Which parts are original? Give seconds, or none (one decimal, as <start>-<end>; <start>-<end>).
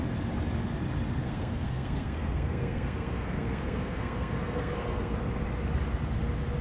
0.0-1.2; 5.2-6.6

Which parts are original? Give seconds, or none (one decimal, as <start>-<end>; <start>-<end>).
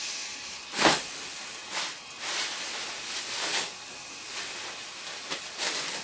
0.0-6.0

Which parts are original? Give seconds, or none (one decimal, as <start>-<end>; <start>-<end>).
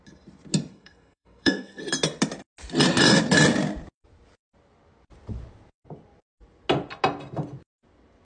0.0-0.7; 1.8-8.2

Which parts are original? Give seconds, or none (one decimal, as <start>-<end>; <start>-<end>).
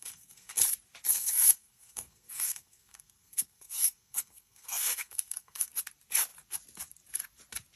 0.6-1.1; 5.7-7.8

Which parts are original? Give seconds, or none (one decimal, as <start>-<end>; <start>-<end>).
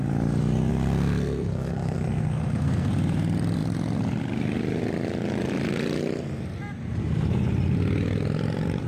0.0-0.7; 2.9-8.9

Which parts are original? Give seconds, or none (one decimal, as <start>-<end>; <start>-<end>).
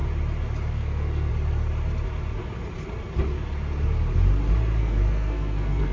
0.0-0.7; 1.3-4.8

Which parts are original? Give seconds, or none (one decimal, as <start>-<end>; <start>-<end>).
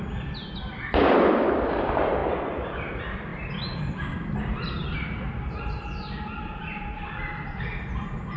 0.0-8.4